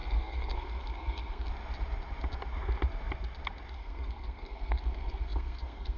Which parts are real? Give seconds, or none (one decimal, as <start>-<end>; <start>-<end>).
1.5-3.7